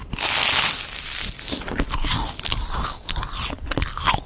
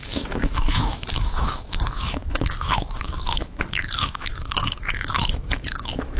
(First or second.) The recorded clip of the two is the first